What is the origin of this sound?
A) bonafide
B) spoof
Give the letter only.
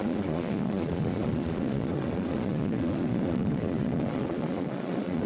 B